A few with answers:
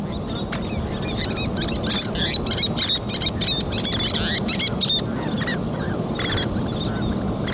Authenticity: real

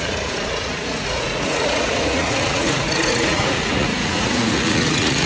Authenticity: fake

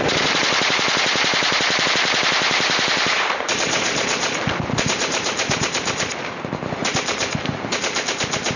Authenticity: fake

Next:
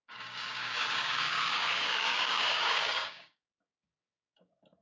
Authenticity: fake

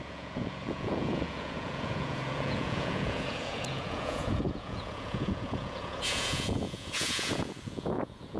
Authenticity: fake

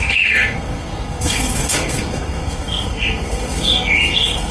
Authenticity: fake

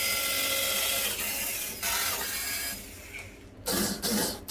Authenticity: real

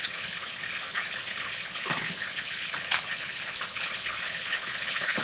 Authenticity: fake